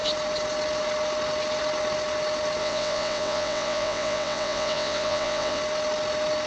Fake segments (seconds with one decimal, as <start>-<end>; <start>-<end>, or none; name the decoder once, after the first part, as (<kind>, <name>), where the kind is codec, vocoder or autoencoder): 2.6-5.6 (vocoder, WaveNeXt)

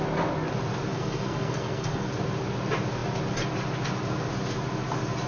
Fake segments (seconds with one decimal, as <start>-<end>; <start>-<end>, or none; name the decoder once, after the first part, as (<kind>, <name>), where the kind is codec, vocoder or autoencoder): 0.9-2.1 (codec, SNAC)

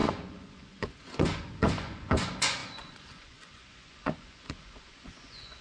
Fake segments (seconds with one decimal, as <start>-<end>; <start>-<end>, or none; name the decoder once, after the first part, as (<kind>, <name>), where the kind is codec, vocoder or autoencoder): 0.0-5.6 (vocoder, Vocos)